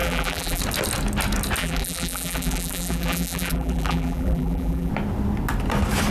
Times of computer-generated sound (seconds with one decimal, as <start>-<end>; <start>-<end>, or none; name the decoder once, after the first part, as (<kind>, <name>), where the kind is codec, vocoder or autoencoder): 0.0-0.6 (vocoder, BigVGAN v2); 1.6-4.9